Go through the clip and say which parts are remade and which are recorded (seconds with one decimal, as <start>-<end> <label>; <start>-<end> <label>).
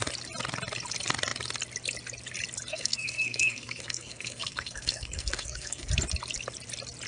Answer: 0.0-2.7 recorded; 2.7-5.9 remade; 5.9-7.1 recorded